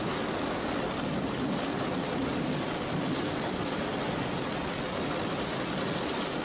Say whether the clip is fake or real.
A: real